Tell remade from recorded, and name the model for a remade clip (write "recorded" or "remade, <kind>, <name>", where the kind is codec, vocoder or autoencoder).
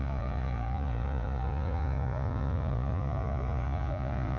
remade, vocoder, Vocos